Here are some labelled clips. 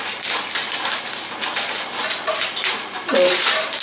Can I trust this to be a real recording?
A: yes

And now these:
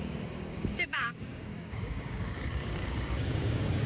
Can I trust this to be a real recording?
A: no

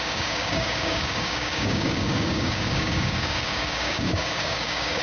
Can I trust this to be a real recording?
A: no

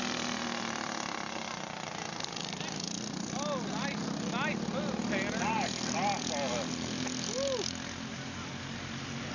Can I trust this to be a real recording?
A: yes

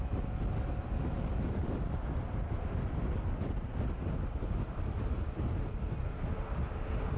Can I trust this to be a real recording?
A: yes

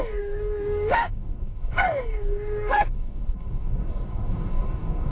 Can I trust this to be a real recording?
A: no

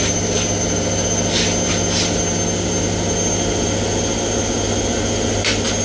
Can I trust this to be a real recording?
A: yes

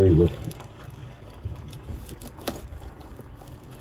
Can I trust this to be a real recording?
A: no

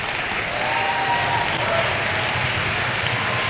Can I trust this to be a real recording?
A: yes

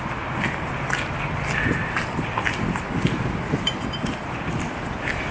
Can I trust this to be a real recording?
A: yes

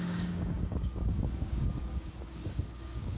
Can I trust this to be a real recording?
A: no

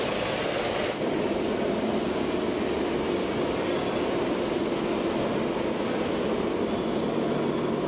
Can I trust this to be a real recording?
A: yes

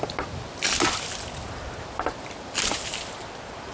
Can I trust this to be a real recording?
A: yes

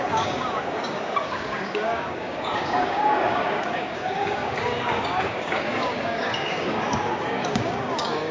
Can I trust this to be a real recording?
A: no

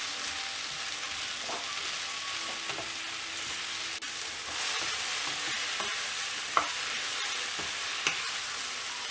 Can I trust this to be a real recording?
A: yes